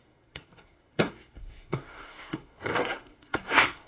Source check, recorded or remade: remade